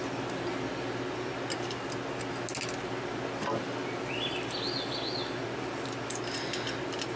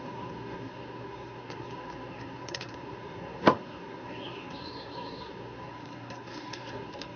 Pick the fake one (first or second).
second